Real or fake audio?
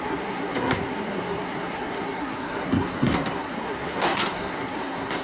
fake